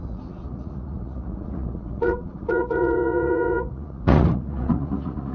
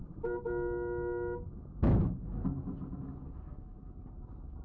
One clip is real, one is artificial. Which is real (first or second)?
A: second